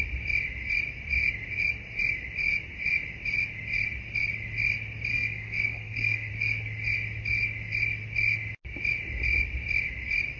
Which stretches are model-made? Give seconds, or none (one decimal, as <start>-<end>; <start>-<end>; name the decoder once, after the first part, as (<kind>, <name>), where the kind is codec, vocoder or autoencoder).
5.1-6.3 (codec, SNAC)